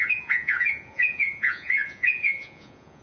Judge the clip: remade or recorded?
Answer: remade